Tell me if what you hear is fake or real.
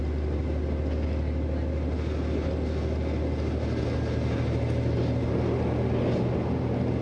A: real